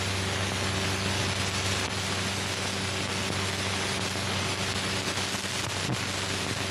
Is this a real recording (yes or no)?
yes